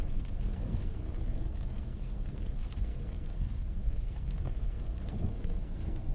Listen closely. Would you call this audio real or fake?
fake